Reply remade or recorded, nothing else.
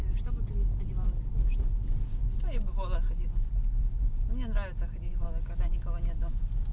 recorded